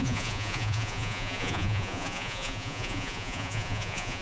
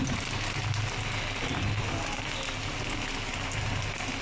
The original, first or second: second